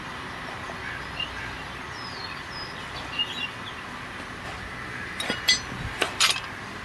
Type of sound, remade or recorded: recorded